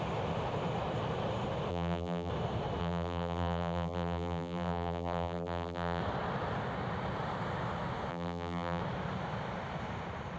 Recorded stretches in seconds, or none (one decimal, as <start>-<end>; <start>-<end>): 0.0-1.7; 2.3-2.8; 6.0-8.1; 8.8-10.4